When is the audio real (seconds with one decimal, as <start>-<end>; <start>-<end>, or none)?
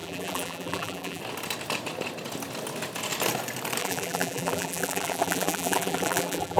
1.2-3.8